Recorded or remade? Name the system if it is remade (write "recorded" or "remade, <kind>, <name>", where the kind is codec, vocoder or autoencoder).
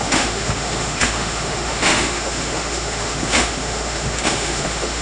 remade, autoencoder, DAC-VAE